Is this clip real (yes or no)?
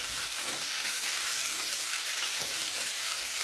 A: no